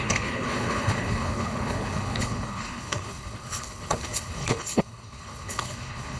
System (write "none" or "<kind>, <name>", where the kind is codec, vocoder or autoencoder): codec, HILCodec